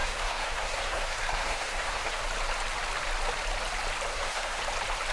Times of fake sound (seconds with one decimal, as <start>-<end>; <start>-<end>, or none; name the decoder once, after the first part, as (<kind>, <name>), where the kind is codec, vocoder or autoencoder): 0.0-2.2 (codec, SNAC); 4.1-4.6